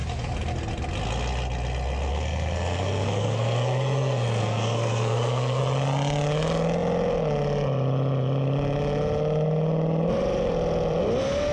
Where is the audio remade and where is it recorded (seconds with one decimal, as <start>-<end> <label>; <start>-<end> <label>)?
0.0-2.1 recorded; 2.1-5.6 remade; 5.6-11.5 recorded